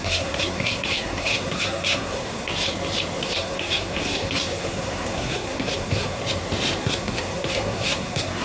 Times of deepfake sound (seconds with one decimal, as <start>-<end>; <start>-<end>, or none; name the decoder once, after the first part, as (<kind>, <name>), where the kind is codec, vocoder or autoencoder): 0.0-2.5 (codec, SNAC); 3.2-6.2; 6.8-8.4